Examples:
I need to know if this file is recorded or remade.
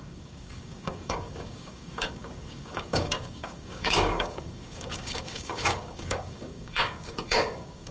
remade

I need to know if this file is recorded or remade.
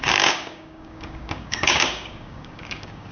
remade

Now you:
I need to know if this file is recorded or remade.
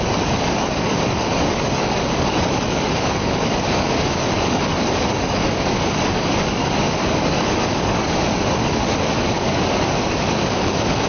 remade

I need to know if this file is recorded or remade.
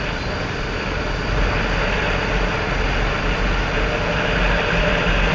recorded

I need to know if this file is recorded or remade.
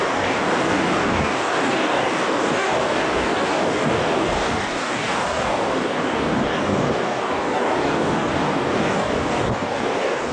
remade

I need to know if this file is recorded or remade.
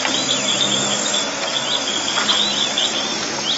recorded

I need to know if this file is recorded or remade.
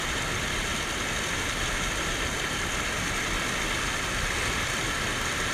recorded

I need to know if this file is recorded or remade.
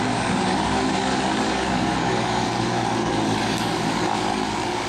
remade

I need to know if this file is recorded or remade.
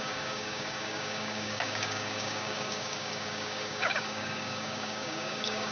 remade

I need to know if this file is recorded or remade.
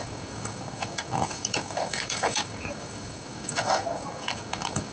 remade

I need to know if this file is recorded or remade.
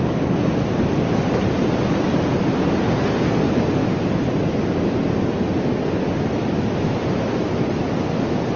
recorded